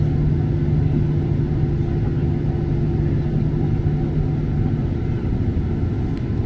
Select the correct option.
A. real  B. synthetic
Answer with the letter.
A